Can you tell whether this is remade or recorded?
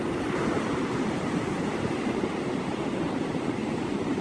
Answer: recorded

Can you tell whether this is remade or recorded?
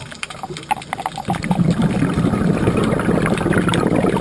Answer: recorded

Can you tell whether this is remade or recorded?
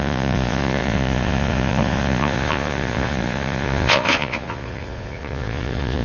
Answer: remade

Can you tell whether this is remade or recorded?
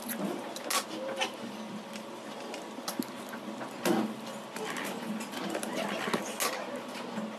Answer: recorded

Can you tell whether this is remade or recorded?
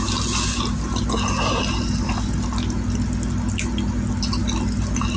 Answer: recorded